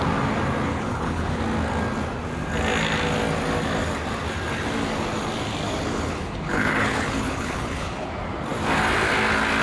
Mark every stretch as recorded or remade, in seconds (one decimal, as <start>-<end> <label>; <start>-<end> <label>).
0.0-0.7 recorded; 0.7-1.4 remade; 1.4-5.9 recorded; 5.9-8.1 remade; 8.1-9.6 recorded